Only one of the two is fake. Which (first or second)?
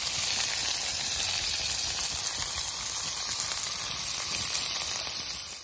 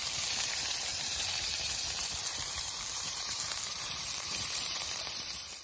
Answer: second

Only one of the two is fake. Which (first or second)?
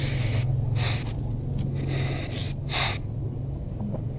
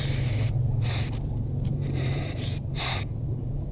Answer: second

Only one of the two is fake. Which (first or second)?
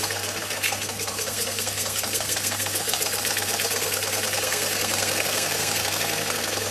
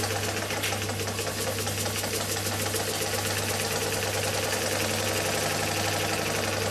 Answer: first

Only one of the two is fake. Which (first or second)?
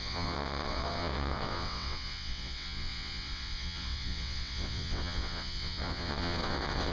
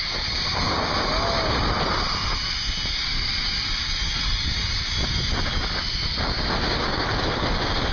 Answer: first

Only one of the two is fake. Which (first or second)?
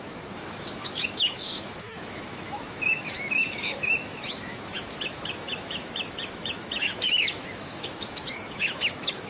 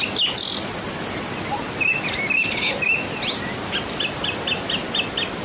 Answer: first